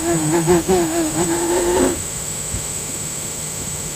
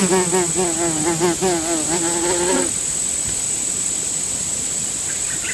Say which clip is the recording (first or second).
second